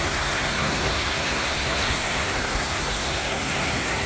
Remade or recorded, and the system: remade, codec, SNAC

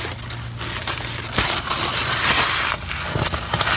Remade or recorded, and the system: recorded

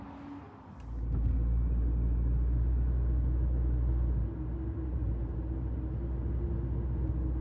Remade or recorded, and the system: recorded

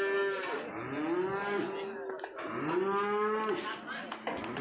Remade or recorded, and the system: recorded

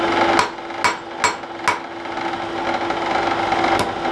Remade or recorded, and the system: recorded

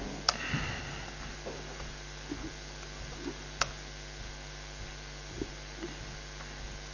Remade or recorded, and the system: recorded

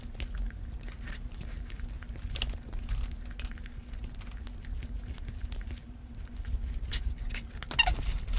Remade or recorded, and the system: recorded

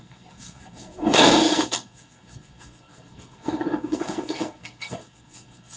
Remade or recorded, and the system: remade, codec, SNAC